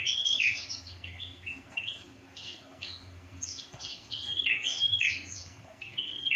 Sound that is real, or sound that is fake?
fake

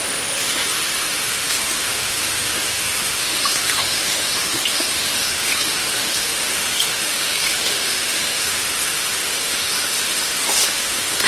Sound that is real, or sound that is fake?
fake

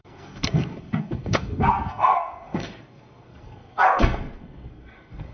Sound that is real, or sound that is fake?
fake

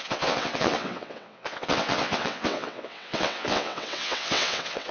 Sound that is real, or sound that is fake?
fake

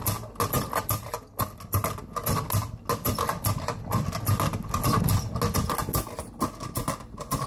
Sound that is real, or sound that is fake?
real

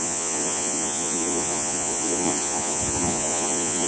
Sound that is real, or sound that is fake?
fake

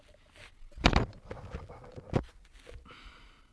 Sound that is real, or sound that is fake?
real